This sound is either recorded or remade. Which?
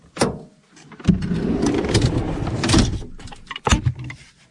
recorded